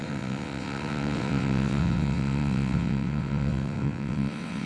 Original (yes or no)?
no